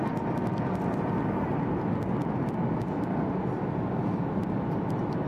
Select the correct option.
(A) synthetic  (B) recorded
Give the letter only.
B